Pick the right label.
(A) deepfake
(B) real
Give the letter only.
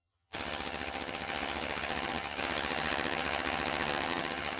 A